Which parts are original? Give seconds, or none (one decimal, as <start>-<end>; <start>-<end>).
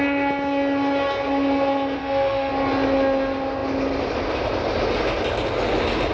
0.0-2.0; 2.5-6.1